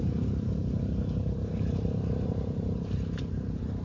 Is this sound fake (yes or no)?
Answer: yes